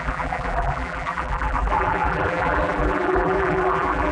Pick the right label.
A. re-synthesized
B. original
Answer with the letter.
A